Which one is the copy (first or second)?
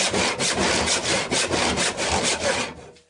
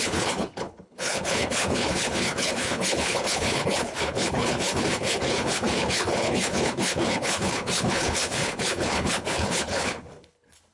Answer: second